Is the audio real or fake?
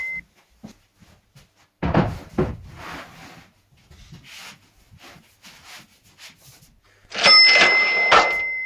real